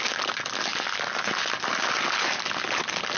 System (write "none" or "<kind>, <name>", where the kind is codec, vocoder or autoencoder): none